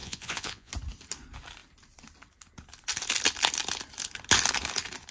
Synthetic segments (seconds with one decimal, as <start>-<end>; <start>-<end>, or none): 0.0-0.7